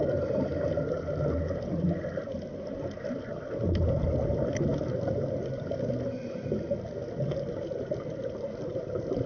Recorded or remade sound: recorded